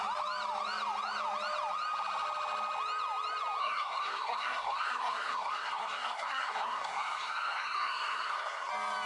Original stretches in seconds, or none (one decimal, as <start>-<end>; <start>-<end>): 0.0-3.6; 8.7-9.1